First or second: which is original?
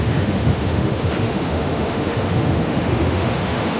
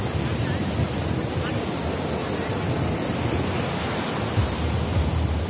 second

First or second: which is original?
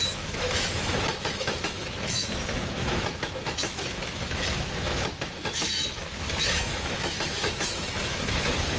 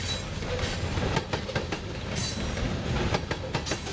second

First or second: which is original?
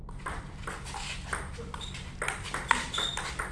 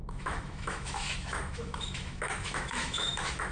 first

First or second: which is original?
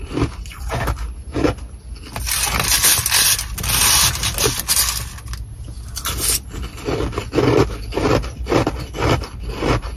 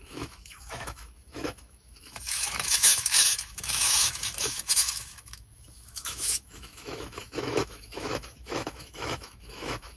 first